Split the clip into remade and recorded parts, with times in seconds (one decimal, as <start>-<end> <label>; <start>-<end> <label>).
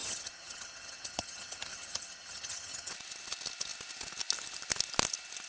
0.0-2.9 remade; 2.9-5.5 recorded